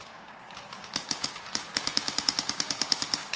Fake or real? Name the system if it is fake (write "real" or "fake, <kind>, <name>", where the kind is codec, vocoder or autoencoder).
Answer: fake, codec, DAC